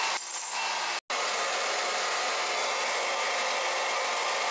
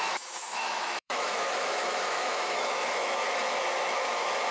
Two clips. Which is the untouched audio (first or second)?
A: first